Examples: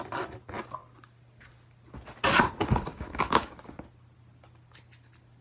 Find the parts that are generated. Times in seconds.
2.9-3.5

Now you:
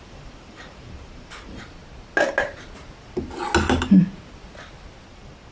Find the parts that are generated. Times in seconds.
0.0-1.8; 5.1-5.5